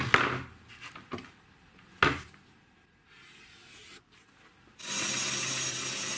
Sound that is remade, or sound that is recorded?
recorded